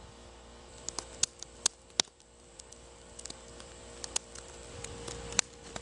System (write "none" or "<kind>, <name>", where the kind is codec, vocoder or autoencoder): vocoder, BigVGAN v2